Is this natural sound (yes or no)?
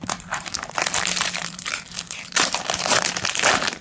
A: no